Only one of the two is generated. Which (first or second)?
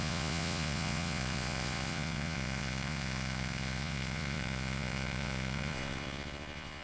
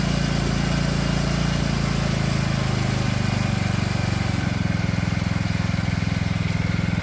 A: first